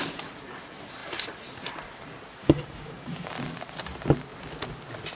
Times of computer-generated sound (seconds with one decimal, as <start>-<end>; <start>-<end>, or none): 2.4-3.3